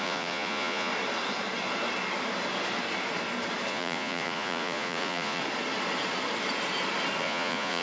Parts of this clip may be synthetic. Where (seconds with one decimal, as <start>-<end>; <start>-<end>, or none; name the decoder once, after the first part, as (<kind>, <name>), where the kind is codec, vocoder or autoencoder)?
0.0-0.9 (vocoder, Vocos); 3.7-5.4; 7.2-7.8